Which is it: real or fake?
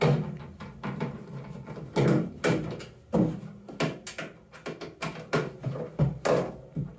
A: real